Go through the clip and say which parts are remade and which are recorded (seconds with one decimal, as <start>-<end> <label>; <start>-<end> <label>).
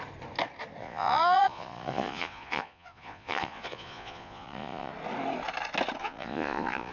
0.0-0.8 recorded; 0.8-4.9 remade; 4.9-6.0 recorded; 6.0-6.9 remade